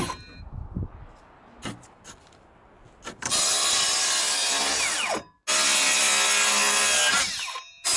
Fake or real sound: real